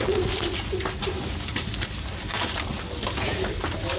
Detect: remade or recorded recorded